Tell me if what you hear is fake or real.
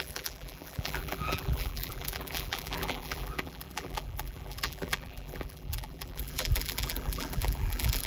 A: fake